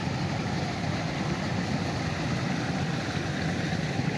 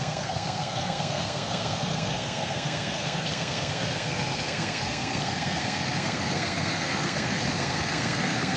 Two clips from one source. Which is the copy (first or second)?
second